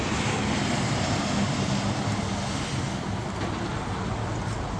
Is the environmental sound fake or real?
real